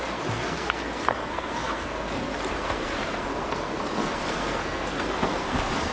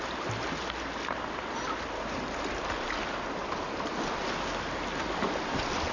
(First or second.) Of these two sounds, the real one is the second